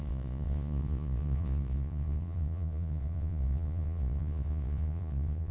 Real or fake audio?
fake